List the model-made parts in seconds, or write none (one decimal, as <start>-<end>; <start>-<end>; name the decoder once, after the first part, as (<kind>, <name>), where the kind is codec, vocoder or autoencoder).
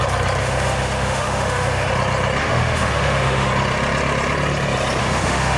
0.4-1.9 (autoencoder, DAC-VAE); 2.4-3.5; 5.0-5.6